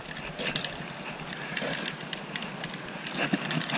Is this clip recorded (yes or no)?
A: yes